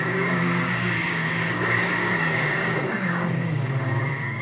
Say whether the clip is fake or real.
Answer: fake